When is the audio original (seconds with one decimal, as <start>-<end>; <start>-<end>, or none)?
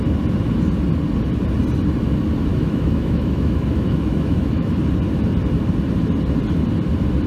0.0-2.5; 4.8-7.3